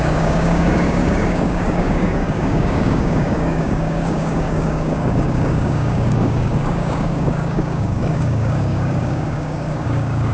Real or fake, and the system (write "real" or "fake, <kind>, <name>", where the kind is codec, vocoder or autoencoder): fake, codec, DAC